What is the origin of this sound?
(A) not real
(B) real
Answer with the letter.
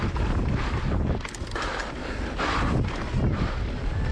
B